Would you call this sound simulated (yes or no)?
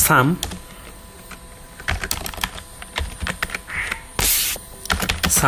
no